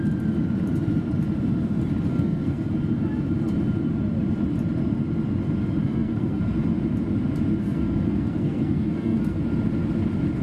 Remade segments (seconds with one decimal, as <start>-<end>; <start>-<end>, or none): 2.1-2.7; 5.8-6.4; 7.6-9.4